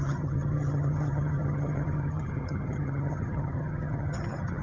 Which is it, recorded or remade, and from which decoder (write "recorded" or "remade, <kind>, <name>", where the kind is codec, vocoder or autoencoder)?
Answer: remade, vocoder, HiFi-GAN